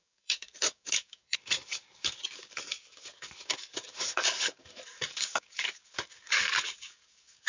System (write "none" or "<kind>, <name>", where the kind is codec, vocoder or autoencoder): codec, DAC